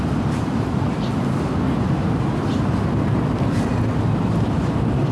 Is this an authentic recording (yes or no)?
yes